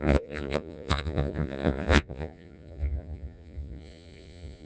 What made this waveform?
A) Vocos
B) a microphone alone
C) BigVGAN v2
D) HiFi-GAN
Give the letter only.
A